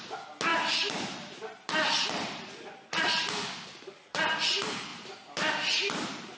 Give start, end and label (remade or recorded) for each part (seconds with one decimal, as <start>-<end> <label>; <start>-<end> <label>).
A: 0.0-0.5 recorded; 0.5-4.2 remade; 4.2-6.4 recorded